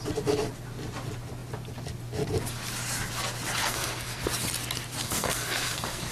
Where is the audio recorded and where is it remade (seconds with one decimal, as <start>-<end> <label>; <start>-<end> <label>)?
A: 0.0-3.6 recorded; 3.6-4.2 remade; 4.2-5.0 recorded; 5.0-6.1 remade